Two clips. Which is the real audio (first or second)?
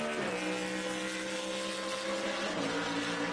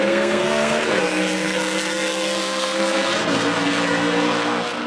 first